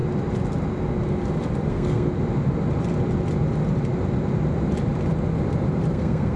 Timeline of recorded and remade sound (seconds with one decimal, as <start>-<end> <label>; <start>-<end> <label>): 0.0-1.7 recorded; 1.7-2.1 remade; 2.1-5.9 recorded; 5.9-6.4 remade

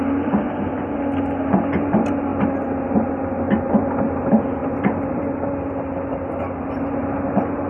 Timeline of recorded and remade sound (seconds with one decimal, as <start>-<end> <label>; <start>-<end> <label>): 0.0-7.7 recorded

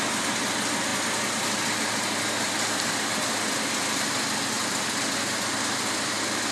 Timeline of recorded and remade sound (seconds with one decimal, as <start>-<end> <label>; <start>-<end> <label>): 0.0-6.5 recorded